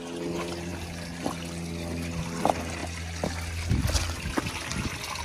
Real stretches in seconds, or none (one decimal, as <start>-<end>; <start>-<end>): 0.0-5.2